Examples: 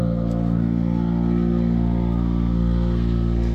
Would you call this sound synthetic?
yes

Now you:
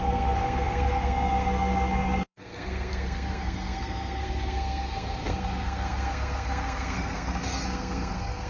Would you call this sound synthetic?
yes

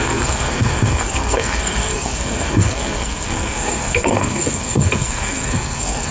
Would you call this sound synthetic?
yes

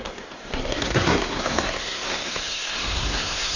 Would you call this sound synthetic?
yes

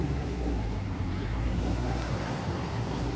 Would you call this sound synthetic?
yes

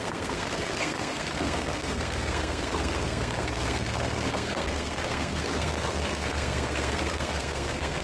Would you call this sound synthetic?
yes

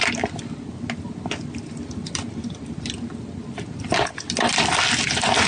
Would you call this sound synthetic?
no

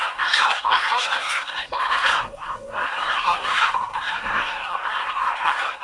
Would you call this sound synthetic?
yes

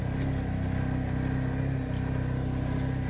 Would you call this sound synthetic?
no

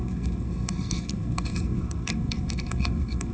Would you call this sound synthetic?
yes